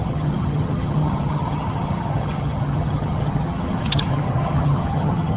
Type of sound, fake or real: fake